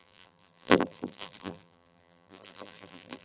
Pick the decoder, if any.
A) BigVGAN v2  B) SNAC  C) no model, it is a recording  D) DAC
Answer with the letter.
A